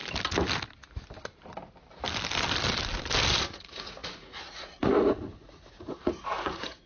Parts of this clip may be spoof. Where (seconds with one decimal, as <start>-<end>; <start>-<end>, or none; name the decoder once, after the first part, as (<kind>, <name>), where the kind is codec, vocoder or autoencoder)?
3.4-6.9 (vocoder, Vocos)